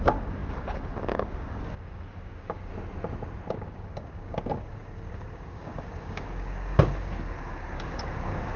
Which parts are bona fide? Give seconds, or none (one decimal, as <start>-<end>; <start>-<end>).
2.7-3.5